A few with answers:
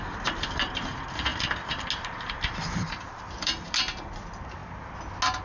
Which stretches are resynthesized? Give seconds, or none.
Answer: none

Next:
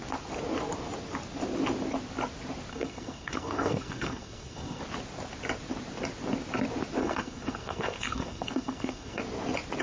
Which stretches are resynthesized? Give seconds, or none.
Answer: 2.7-4.8 (codec, SNAC); 7.0-9.2

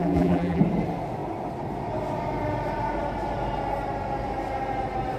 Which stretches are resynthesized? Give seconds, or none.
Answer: 0.0-0.6 (vocoder, BigVGAN v2)

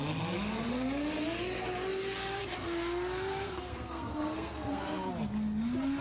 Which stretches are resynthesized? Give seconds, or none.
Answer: 3.3-5.1 (codec, SNAC)

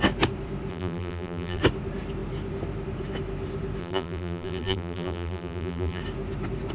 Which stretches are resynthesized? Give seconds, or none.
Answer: 0.7-1.6 (vocoder, BigVGAN v2); 3.8-6.0

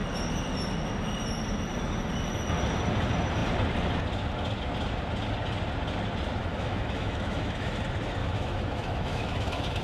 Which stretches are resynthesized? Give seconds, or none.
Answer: 6.4-7.8 (autoencoder, DAC-VAE); 8.2-9.8